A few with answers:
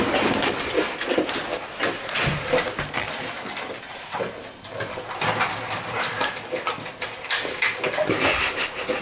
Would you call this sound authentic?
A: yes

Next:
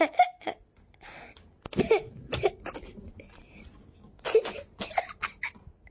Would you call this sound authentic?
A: yes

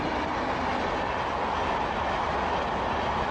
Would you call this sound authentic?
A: yes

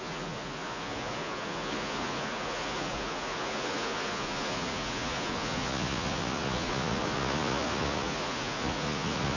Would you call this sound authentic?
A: no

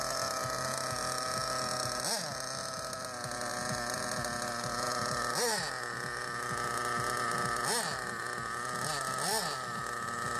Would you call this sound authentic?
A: yes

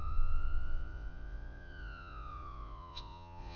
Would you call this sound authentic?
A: no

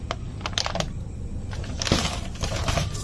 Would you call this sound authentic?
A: yes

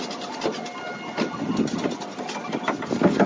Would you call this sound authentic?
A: yes